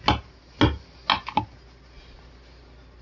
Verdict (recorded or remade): recorded